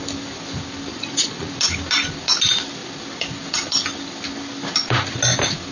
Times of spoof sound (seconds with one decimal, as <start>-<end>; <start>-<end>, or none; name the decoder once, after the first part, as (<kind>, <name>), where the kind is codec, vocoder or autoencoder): 0.9-1.5 (vocoder, Vocos)